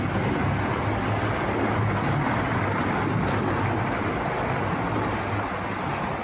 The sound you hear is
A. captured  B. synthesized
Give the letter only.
A